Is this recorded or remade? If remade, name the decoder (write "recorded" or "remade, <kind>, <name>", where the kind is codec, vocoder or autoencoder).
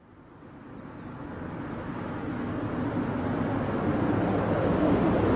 recorded